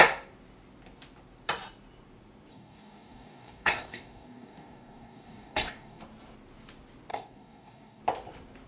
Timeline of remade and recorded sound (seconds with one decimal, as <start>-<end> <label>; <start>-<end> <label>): 0.0-2.5 recorded; 2.5-6.0 remade; 6.0-7.1 recorded; 7.1-8.0 remade; 8.0-8.7 recorded